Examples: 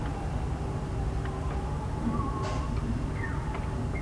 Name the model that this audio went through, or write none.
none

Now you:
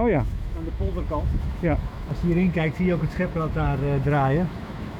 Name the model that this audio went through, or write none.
autoencoder, DAC-VAE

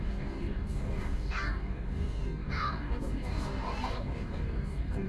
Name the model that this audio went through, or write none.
codec, DAC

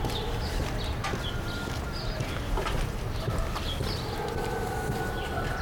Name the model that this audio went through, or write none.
none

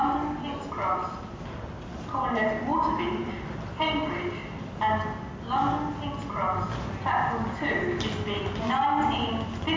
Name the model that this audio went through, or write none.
none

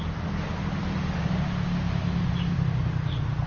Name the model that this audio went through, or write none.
none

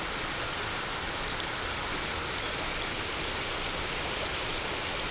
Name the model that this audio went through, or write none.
none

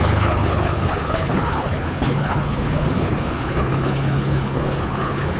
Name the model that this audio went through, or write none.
codec, HILCodec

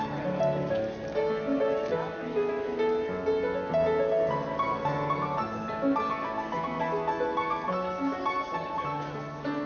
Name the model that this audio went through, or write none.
none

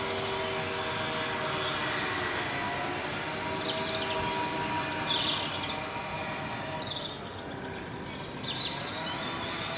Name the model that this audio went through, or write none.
none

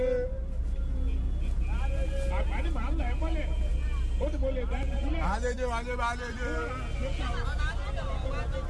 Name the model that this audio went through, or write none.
none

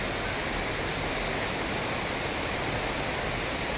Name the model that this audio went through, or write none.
none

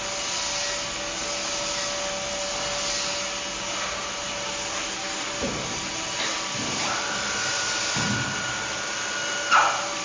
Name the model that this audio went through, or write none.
none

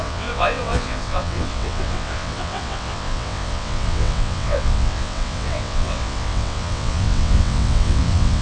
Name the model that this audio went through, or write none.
vocoder, WaveNeXt